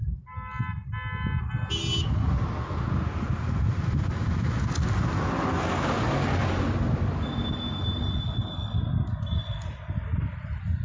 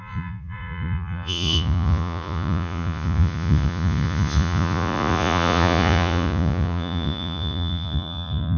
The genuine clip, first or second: first